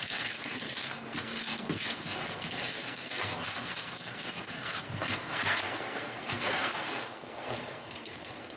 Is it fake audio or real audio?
fake